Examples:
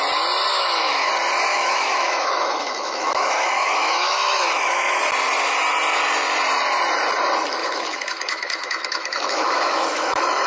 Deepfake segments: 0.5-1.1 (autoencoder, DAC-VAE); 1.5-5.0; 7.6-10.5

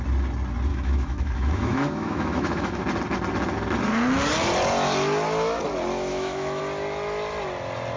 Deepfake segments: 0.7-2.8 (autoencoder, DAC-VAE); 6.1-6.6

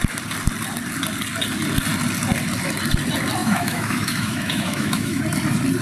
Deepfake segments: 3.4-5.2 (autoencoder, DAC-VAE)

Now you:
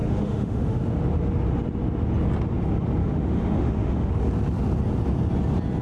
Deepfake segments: 0.0-0.8 (autoencoder, DAC-VAE); 3.0-4.1

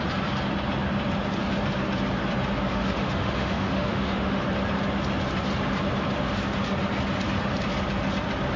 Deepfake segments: 2.7-4.4 (autoencoder, DAC-VAE)

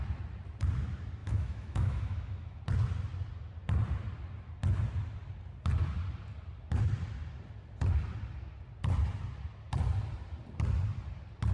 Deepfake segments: 1.2-2.6 (autoencoder, DAC-VAE)

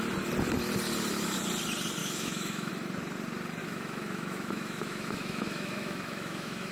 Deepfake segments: 2.0-2.7 (autoencoder, DAC-VAE); 3.6-6.7

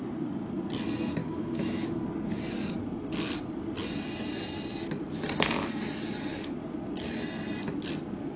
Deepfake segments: 1.2-2.0 (autoencoder, DAC-VAE)